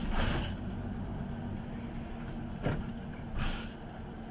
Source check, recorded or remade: recorded